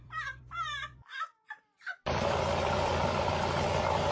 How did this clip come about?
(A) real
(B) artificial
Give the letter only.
B